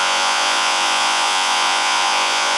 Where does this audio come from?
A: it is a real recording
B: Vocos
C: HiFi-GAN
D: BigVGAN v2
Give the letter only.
B